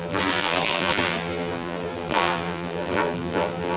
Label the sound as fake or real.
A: fake